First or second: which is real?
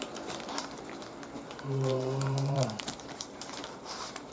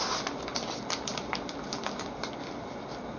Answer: second